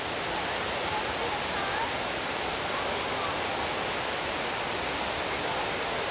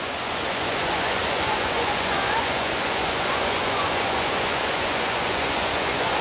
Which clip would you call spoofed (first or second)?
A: second